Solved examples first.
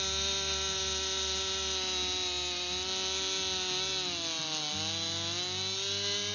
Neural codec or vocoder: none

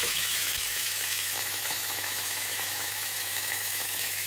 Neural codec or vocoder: autoencoder, DAC-VAE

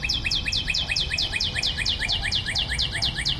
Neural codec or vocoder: none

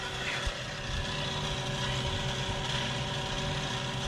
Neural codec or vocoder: none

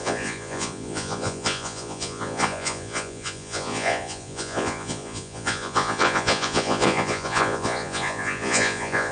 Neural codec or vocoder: vocoder, Vocos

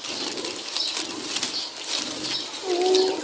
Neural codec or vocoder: none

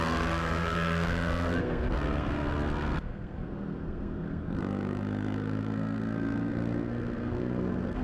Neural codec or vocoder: codec, SNAC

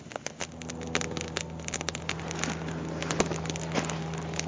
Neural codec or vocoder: none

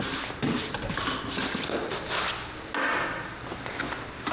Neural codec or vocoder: none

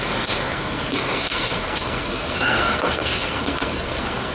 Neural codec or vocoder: codec, SNAC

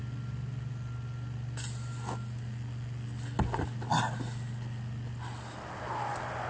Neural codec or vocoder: none